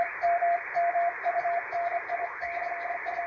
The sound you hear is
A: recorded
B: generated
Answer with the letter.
A